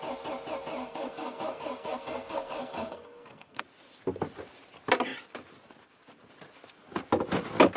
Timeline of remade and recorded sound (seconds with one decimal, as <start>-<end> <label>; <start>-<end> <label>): 0.0-0.8 recorded; 0.8-3.6 remade; 3.6-7.8 recorded